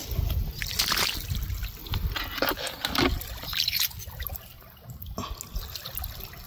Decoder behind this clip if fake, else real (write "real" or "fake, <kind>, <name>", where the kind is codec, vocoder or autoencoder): real